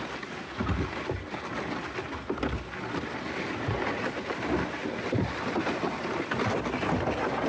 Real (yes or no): yes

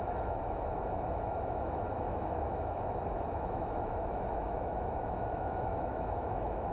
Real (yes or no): no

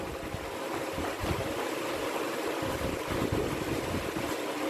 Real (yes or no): yes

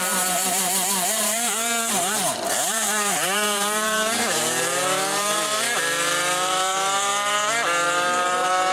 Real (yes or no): no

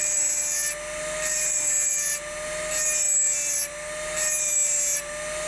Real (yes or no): yes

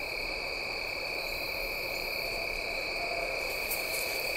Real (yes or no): no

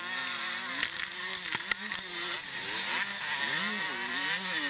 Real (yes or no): yes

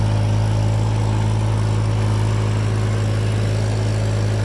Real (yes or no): yes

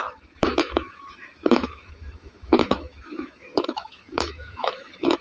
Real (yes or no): no